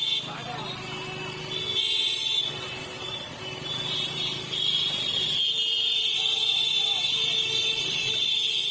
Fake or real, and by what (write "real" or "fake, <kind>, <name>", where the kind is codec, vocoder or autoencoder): real